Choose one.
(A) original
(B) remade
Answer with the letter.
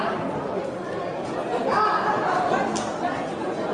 A